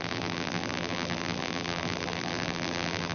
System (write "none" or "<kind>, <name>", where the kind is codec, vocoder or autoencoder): vocoder, BigVGAN v2